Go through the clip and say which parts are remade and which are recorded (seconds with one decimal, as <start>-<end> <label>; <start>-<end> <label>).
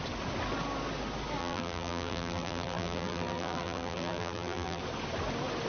0.0-1.4 recorded; 1.4-4.8 remade; 4.8-5.7 recorded